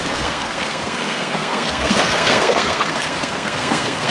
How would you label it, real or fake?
fake